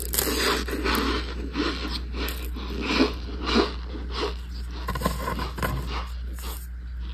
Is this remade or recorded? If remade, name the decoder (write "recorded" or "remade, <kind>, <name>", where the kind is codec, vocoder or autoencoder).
recorded